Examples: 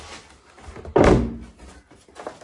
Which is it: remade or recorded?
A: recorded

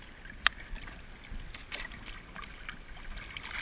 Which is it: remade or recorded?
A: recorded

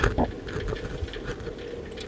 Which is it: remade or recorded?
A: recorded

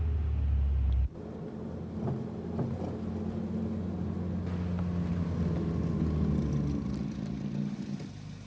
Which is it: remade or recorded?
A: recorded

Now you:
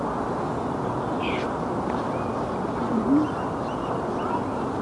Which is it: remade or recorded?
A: recorded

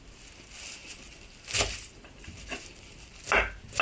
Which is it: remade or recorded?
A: recorded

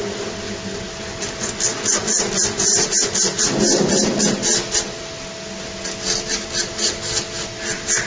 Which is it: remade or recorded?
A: recorded